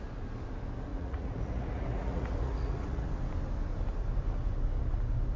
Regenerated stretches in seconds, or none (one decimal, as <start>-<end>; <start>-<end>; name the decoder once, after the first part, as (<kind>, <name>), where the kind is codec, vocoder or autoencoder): 0.9-3.1 (vocoder, Vocos)